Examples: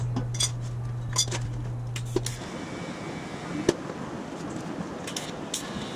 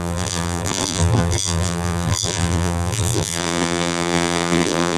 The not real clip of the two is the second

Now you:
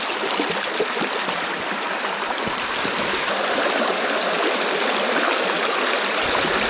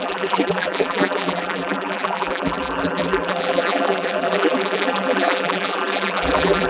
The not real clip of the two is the second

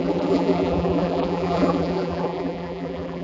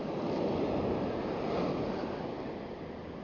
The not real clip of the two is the first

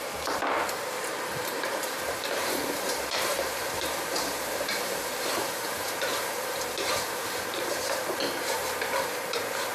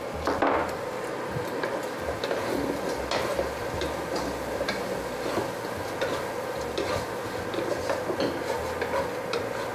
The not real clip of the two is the first